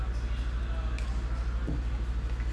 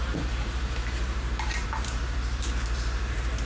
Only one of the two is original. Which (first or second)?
first